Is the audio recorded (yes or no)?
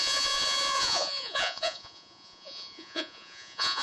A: no